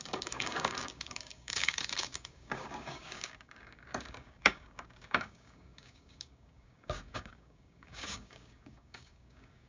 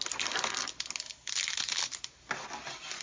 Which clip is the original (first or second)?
second